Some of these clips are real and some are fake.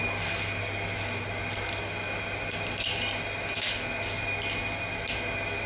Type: real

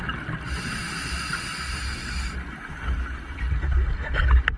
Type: real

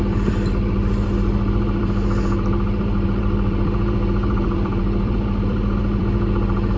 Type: fake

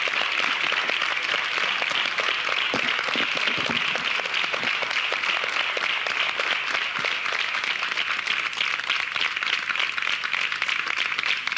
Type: real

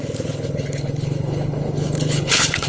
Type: fake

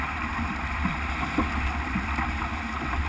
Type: real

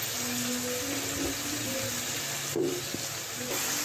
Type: real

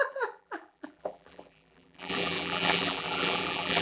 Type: fake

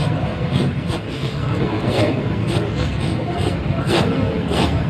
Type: fake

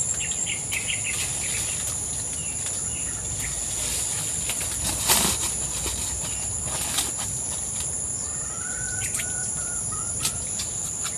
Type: real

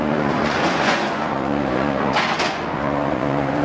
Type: fake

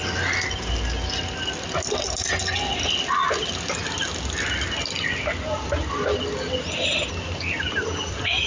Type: real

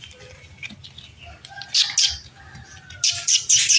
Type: real